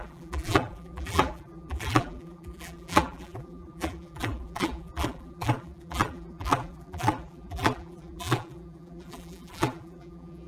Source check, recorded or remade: remade